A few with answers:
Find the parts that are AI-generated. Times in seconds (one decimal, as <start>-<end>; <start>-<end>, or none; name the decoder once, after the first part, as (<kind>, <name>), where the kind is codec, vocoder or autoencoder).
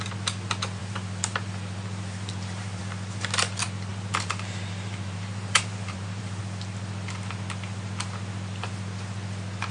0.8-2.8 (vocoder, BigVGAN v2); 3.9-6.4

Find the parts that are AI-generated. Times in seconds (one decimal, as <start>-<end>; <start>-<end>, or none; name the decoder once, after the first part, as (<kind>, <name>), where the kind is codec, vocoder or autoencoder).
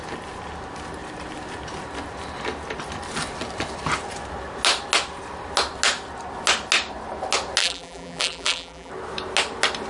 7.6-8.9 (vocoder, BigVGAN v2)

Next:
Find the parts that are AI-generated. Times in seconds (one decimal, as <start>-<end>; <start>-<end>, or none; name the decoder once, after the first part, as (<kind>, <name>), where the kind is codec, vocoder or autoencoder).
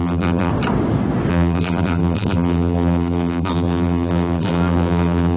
0.0-0.5 (vocoder, BigVGAN v2); 1.3-5.4